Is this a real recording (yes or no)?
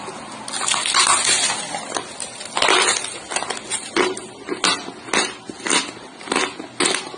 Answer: yes